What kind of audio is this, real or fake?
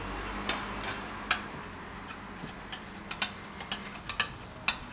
real